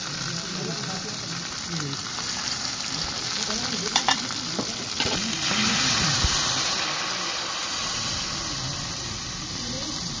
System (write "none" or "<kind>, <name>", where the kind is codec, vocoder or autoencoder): vocoder, BigVGAN v2